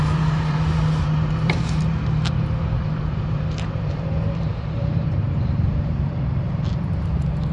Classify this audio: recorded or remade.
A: remade